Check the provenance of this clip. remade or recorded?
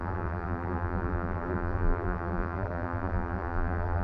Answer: remade